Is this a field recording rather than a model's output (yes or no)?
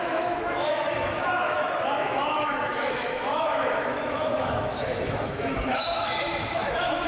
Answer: no